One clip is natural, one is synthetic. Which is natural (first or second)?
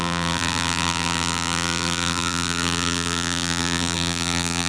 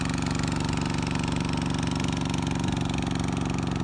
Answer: second